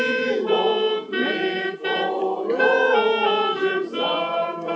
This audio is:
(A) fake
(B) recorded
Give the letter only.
A